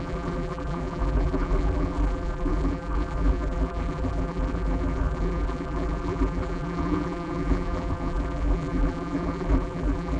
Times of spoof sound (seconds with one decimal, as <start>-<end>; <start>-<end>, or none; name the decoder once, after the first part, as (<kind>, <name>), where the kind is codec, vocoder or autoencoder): 0.0-10.2 (vocoder, BigVGAN v2)